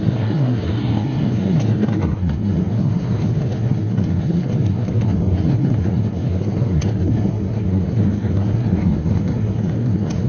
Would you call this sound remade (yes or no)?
yes